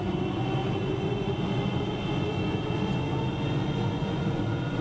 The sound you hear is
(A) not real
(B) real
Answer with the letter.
A